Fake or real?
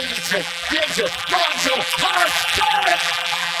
fake